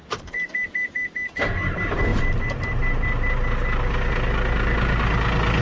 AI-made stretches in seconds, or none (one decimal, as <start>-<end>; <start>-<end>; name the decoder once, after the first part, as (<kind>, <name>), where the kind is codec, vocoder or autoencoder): none